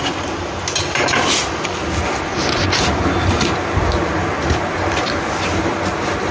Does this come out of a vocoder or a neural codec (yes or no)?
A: no